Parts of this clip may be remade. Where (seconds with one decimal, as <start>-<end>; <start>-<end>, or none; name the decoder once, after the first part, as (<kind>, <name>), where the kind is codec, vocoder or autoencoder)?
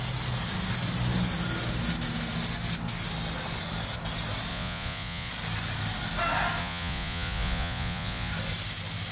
4.5-5.3 (vocoder, Vocos); 6.6-8.3